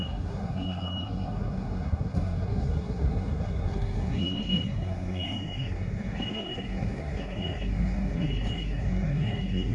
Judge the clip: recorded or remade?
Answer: remade